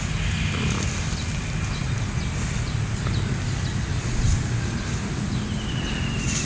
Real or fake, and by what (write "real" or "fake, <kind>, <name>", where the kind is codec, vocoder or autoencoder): real